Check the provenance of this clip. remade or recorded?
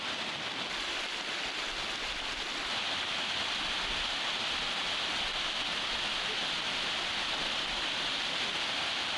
recorded